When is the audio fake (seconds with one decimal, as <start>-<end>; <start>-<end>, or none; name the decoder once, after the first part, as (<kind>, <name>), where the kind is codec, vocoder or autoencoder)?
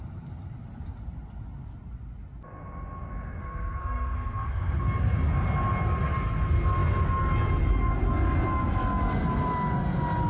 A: 3.4-4.8 (codec, SNAC)